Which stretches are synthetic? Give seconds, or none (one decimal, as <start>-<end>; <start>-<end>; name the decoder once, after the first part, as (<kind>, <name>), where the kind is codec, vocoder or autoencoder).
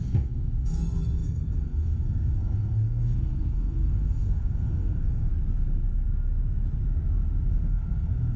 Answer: 0.0-5.3 (codec, SNAC); 7.5-8.4